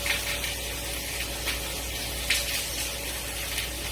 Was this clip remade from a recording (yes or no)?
no